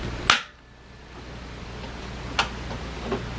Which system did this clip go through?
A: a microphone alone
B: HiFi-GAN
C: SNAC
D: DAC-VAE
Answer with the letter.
A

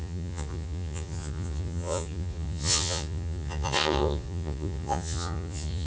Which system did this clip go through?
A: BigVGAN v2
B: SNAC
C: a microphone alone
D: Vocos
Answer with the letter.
D